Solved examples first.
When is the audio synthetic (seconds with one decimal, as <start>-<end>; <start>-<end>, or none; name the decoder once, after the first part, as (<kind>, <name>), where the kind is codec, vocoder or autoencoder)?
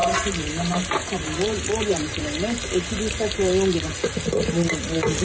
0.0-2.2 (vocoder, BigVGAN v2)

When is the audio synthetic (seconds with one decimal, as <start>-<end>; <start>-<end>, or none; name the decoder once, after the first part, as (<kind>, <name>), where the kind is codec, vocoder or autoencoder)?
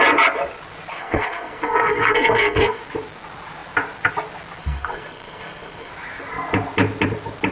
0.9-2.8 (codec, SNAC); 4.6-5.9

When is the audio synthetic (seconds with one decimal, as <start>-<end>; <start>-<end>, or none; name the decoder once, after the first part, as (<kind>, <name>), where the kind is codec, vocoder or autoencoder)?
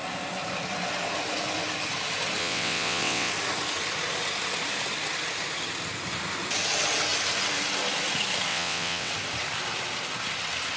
2.4-3.3 (vocoder, WaveNeXt); 8.5-9.1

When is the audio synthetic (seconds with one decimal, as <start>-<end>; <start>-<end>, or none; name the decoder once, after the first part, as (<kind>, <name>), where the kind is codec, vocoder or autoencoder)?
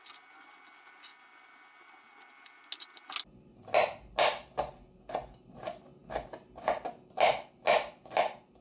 none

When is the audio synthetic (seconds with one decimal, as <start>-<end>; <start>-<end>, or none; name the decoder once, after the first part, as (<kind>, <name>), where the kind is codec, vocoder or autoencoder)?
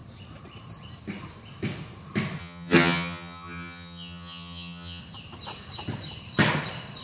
2.4-5.0 (vocoder, HiFi-GAN)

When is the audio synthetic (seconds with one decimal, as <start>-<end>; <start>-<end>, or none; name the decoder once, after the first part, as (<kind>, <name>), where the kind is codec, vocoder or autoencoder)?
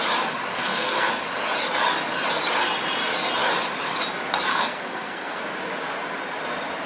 0.5-1.1 (codec, SNAC); 4.5-5.4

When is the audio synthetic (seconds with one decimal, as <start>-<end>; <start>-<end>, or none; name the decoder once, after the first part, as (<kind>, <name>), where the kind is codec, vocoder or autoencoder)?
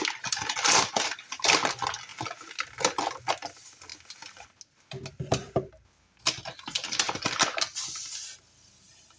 none